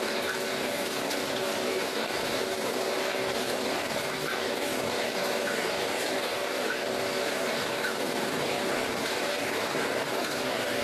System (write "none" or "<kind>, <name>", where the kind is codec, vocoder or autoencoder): codec, DAC